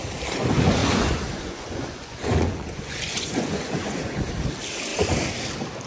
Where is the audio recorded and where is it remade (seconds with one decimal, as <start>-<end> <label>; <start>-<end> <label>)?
0.0-0.8 recorded; 0.8-4.3 remade; 4.3-5.9 recorded